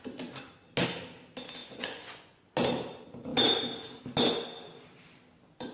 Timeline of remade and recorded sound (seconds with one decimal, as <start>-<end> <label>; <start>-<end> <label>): 0.0-1.6 recorded; 1.6-2.4 remade; 2.4-5.7 recorded